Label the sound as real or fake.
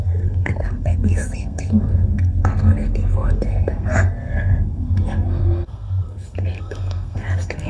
fake